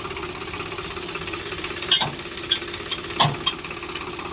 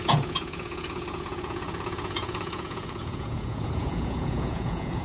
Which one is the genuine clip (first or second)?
first